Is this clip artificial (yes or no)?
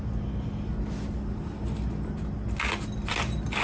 no